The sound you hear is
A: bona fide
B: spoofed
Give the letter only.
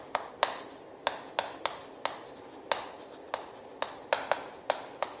A